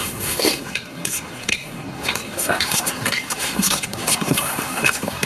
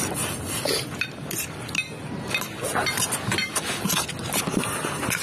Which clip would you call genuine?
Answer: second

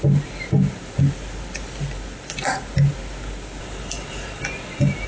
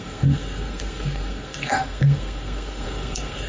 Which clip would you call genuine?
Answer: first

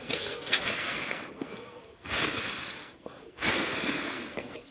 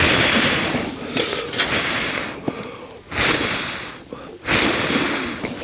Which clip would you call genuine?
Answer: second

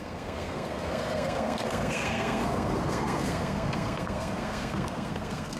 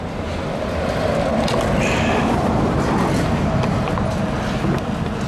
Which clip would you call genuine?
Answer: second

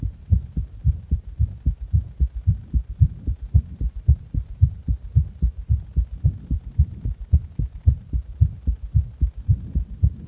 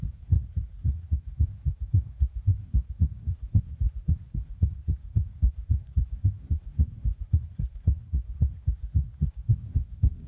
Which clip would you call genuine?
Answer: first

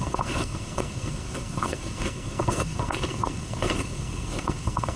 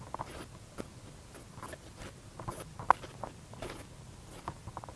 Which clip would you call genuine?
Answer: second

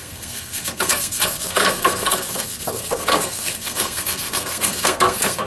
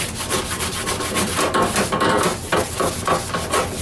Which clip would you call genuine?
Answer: second